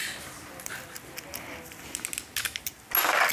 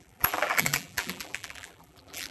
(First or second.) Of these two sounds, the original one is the first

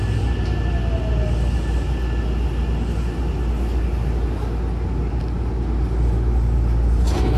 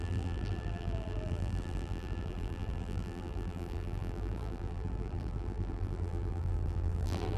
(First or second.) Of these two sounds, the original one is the first